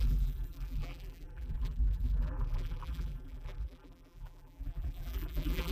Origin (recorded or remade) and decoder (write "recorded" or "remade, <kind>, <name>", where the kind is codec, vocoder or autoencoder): remade, vocoder, BigVGAN v2